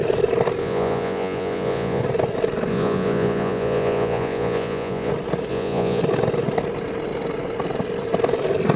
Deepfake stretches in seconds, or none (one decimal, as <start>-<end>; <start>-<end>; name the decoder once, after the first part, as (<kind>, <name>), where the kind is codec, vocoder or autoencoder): 0.6-2.0 (vocoder, Vocos); 2.7-5.1; 5.5-6.0